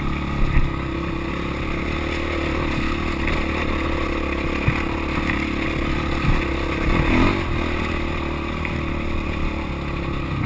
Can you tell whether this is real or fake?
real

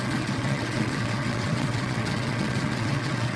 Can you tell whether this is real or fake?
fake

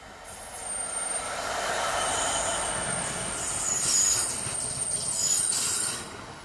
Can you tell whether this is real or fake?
real